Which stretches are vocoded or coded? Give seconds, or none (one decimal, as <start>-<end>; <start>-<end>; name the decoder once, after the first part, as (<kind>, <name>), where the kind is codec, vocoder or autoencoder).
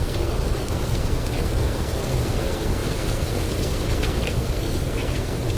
0.0-5.6 (codec, SNAC)